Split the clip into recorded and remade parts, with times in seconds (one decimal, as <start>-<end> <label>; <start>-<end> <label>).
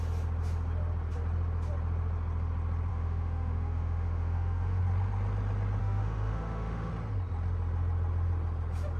0.0-2.9 recorded; 2.9-4.8 remade; 4.8-5.8 recorded; 5.8-6.9 remade; 6.9-9.0 recorded